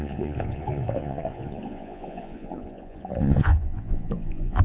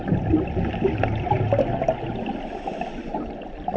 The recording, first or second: second